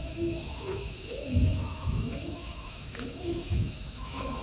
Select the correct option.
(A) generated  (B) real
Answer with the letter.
A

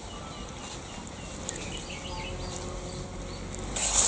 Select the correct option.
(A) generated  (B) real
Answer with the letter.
B